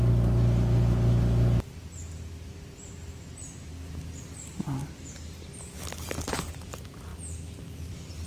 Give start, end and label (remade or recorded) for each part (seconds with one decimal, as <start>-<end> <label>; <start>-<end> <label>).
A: 0.0-8.3 recorded